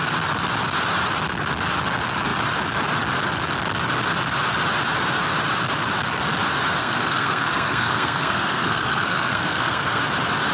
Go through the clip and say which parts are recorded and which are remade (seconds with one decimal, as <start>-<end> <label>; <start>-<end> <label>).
0.0-6.8 recorded; 6.8-10.0 remade; 10.0-10.5 recorded